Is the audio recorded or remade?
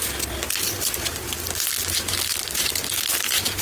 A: recorded